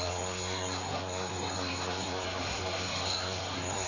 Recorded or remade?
remade